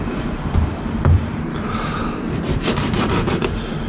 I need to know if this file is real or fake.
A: fake